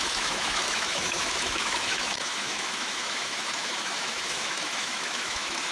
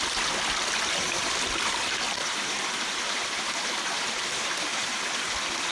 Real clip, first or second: second